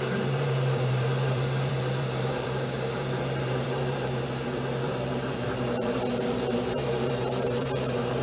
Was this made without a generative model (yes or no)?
no